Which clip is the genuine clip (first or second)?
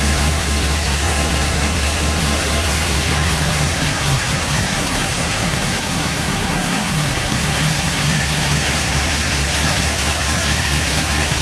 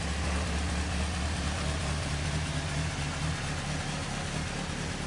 second